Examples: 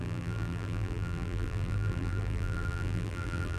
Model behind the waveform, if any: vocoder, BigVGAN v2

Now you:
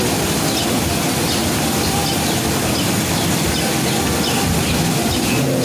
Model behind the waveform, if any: vocoder, BigVGAN v2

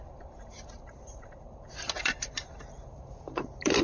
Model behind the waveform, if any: vocoder, BigVGAN v2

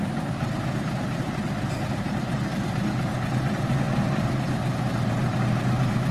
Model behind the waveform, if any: vocoder, BigVGAN v2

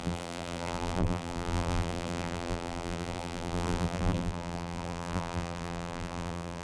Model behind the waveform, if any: vocoder, BigVGAN v2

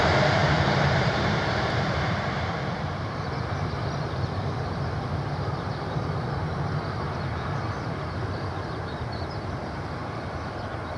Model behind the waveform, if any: vocoder, BigVGAN v2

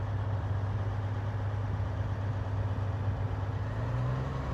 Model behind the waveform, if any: none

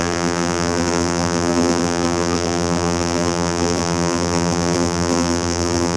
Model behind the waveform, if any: vocoder, BigVGAN v2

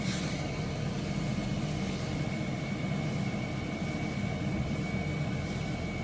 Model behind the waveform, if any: none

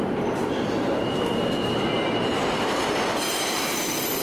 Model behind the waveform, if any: vocoder, BigVGAN v2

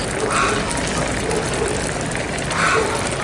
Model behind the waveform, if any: none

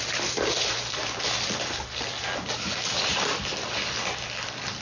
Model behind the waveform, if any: vocoder, BigVGAN v2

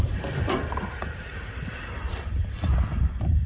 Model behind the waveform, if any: vocoder, BigVGAN v2